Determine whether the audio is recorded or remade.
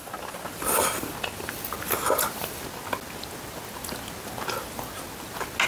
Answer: recorded